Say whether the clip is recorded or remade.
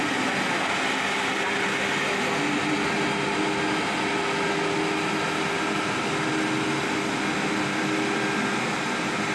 recorded